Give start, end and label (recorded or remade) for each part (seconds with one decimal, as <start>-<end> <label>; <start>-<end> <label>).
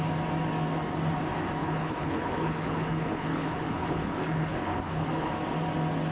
0.0-1.6 recorded; 1.6-5.3 remade; 5.3-6.1 recorded